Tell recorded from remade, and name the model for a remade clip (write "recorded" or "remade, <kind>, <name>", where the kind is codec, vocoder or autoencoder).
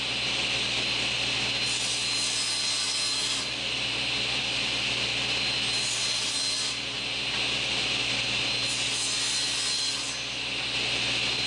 recorded